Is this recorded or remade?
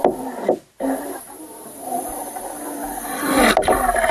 recorded